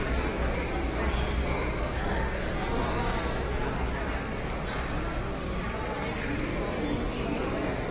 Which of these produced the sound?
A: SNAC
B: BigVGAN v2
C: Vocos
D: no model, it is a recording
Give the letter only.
D